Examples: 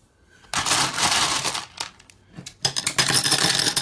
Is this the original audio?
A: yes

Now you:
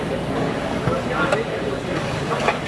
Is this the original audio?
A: no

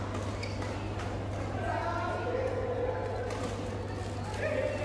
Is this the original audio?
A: yes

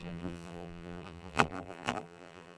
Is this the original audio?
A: no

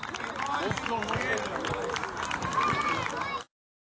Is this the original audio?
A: yes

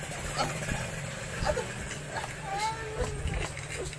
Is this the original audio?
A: yes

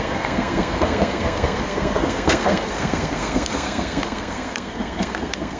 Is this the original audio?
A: no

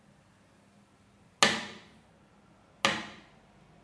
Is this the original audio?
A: yes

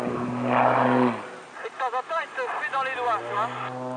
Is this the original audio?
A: yes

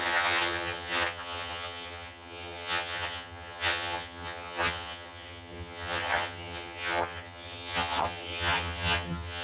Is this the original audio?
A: no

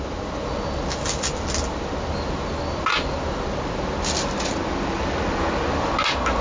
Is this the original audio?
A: yes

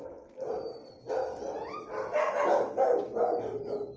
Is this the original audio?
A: yes